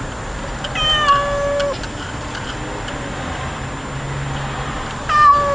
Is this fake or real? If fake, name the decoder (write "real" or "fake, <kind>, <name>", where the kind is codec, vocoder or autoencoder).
real